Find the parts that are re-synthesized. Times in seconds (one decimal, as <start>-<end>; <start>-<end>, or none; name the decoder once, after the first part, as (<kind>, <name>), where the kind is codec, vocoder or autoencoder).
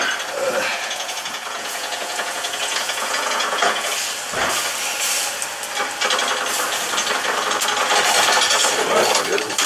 0.7-3.9 (vocoder, Vocos)